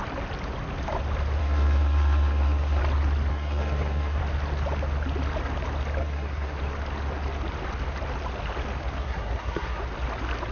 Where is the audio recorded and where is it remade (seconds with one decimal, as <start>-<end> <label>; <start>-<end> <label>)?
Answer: 0.0-1.4 recorded; 1.4-2.8 remade; 2.8-3.3 recorded; 3.3-4.2 remade; 4.2-6.0 recorded; 6.0-6.6 remade; 6.6-9.0 recorded; 9.0-9.8 remade; 9.8-10.5 recorded